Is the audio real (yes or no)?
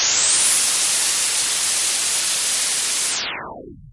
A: yes